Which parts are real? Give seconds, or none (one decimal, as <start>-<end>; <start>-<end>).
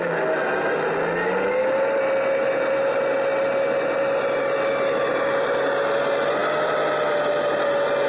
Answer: 0.0-8.1